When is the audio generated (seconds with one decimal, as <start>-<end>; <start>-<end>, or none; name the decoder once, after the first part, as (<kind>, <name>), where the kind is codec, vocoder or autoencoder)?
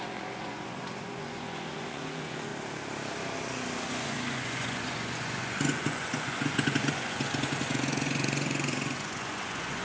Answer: 0.0-2.5 (vocoder, Vocos); 3.9-9.8